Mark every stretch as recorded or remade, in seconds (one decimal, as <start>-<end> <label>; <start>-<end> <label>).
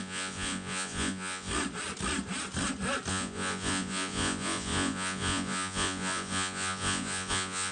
0.0-1.5 remade; 1.5-3.1 recorded; 3.1-7.7 remade